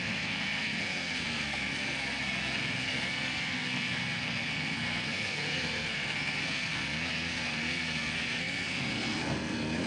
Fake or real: fake